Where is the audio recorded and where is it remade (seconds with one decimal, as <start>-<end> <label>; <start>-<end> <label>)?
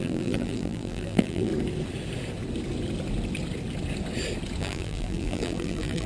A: 0.0-1.5 remade; 1.5-4.6 recorded; 4.6-6.1 remade